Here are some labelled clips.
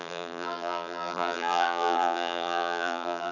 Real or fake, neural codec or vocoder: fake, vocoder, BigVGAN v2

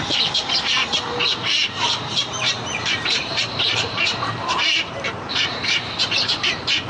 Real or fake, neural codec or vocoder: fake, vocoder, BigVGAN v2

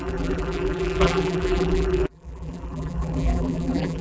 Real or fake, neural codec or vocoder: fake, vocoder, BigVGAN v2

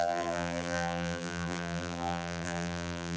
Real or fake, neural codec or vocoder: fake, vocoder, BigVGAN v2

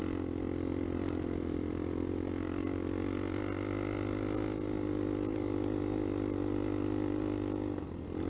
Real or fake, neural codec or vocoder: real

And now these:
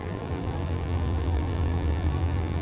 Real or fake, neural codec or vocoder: fake, vocoder, BigVGAN v2